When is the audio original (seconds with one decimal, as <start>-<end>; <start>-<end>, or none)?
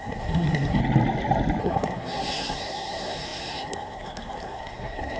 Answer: 0.8-1.6